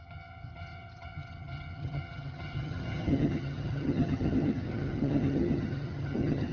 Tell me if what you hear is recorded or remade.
remade